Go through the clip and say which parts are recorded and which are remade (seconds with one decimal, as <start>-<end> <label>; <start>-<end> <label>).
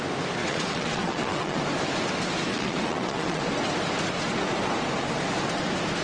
0.0-0.4 recorded; 0.4-1.6 remade; 1.6-2.5 recorded; 2.5-3.4 remade; 3.4-6.0 recorded